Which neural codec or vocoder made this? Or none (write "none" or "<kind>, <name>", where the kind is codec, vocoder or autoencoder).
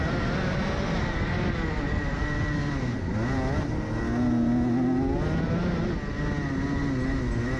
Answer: none